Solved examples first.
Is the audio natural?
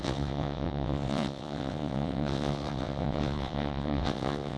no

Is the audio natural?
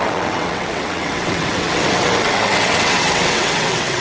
no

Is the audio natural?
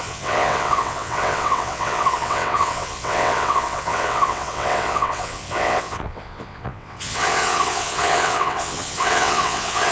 no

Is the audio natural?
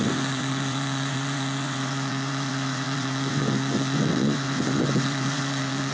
no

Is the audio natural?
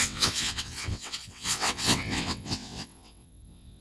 no